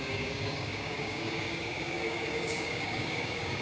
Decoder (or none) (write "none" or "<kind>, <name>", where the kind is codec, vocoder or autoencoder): codec, DAC